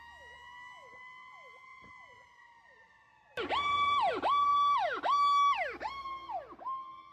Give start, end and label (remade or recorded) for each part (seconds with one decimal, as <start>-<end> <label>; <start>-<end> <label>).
0.0-1.7 recorded; 1.7-4.1 remade; 4.1-7.1 recorded